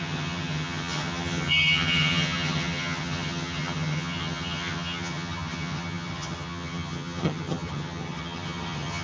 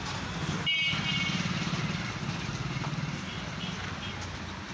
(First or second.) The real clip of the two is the second